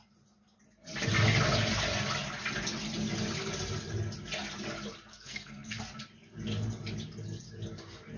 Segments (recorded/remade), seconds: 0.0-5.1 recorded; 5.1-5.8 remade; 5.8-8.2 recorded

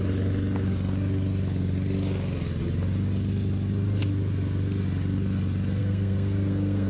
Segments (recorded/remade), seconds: 0.0-5.8 recorded; 5.8-6.9 remade

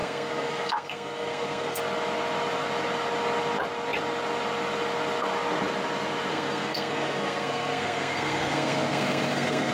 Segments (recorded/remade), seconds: 0.0-1.8 remade; 1.8-6.3 recorded; 6.3-9.7 remade

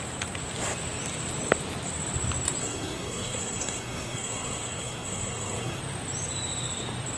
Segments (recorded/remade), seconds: 0.0-2.6 recorded; 2.6-5.8 remade; 5.8-7.2 recorded

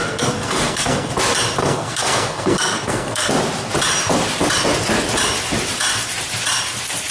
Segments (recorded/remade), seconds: 0.0-1.1 remade; 1.1-1.6 recorded; 1.6-3.3 remade; 3.3-7.1 recorded

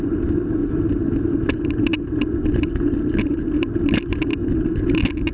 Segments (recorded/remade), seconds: 0.0-5.3 recorded

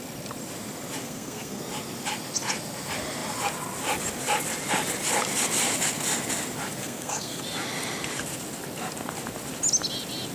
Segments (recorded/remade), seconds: 0.0-1.0 recorded; 1.0-1.6 remade; 1.6-6.8 recorded; 6.8-7.4 remade; 7.4-10.3 recorded